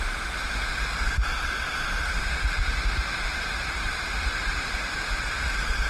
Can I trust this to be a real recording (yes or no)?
no